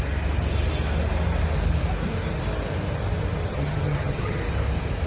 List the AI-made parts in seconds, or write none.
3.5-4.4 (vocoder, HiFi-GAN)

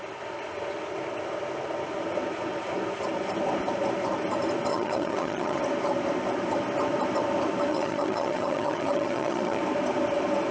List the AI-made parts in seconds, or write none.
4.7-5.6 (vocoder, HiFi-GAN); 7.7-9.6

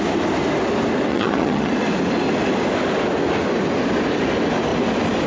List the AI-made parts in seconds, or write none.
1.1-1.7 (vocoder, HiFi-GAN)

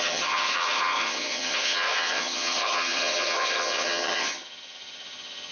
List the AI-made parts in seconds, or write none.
0.0-5.5 (vocoder, HiFi-GAN)